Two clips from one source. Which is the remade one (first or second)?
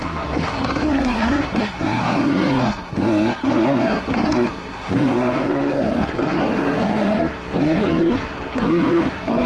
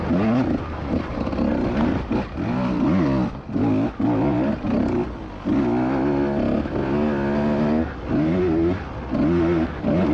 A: first